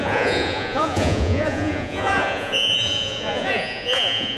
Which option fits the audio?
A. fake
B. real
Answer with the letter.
A